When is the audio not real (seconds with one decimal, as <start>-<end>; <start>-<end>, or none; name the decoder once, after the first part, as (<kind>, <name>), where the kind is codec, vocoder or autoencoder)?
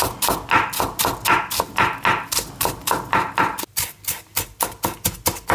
none